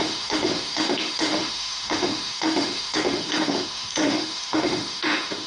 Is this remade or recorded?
remade